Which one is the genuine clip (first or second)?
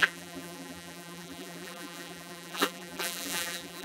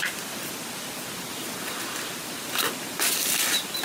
second